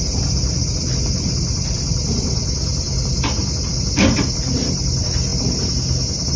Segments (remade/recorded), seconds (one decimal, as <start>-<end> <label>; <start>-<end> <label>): 0.0-5.3 remade; 5.3-6.4 recorded